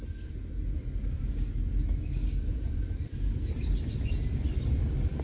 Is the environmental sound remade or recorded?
recorded